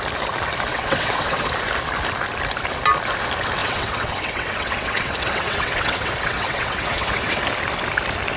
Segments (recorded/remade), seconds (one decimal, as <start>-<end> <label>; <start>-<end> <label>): 0.0-0.7 recorded; 0.7-1.5 remade; 1.5-3.6 recorded; 3.6-7.4 remade; 7.4-8.4 recorded